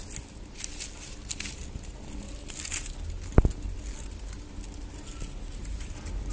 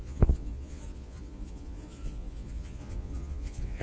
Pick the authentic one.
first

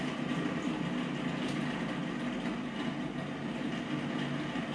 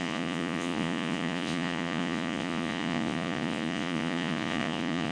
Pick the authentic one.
first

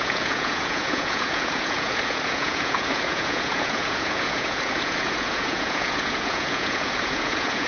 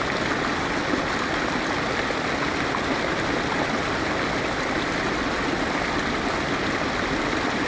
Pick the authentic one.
second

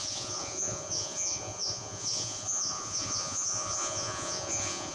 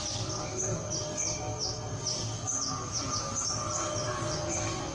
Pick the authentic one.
second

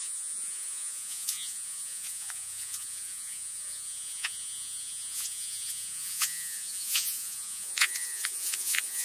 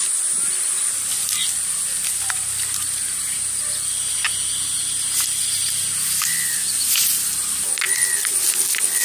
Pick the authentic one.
second